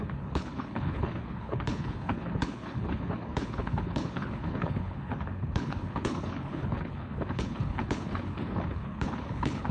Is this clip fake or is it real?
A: fake